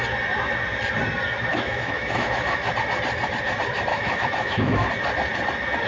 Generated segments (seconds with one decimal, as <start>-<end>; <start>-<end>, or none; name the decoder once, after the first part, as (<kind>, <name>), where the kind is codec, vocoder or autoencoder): 1.5-2.7 (autoencoder, DAC-VAE); 3.9-4.9